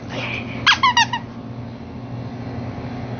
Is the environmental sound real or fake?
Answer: real